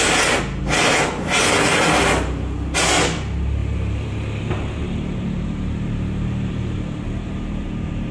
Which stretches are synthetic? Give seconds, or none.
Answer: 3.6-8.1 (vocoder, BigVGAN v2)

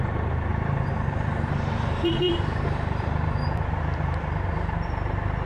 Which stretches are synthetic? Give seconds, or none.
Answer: 0.5-3.8 (vocoder, BigVGAN v2)

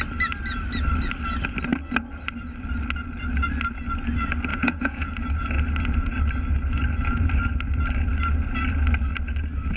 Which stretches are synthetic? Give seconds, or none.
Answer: 4.5-5.1 (vocoder, Vocos)

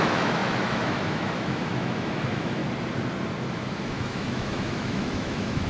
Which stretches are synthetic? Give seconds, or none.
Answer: 0.0-2.6 (autoencoder, DAC-VAE); 3.5-5.7

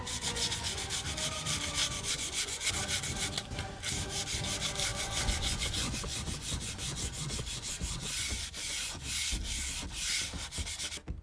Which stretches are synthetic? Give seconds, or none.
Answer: 0.0-0.8 (vocoder, Vocos); 1.8-2.7; 4.9-9.1

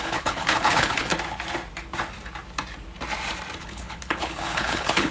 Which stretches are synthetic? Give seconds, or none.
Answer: 0.0-1.1 (codec, HILCodec); 3.6-5.1

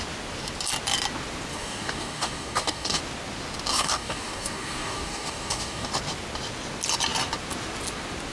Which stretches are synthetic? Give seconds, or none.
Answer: 1.5-3.0 (codec, DAC); 3.7-5.9